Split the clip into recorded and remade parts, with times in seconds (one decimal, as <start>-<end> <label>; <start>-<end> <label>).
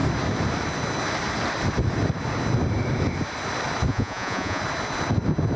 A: 0.0-3.9 recorded; 3.9-4.6 remade; 4.6-5.6 recorded